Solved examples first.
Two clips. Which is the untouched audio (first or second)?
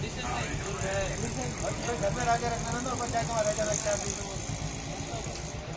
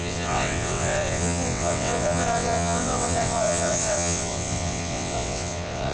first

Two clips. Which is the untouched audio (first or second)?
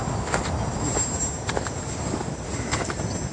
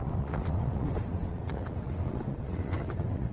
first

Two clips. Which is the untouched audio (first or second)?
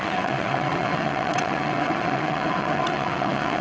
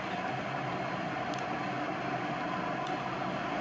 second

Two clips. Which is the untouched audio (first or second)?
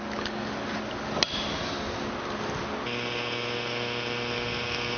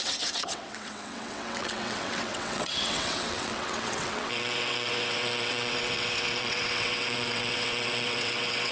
first